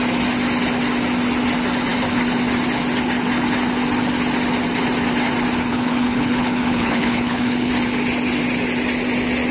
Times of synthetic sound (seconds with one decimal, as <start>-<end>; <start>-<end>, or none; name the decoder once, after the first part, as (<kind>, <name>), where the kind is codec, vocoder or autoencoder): 5.7-7.7 (codec, HILCodec)